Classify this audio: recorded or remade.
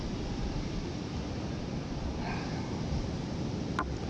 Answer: recorded